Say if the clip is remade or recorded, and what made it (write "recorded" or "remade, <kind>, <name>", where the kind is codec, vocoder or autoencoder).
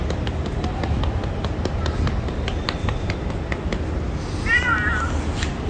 recorded